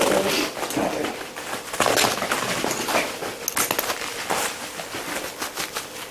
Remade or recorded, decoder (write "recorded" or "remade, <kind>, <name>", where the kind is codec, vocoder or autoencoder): recorded